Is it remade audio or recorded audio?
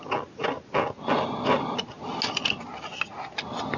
recorded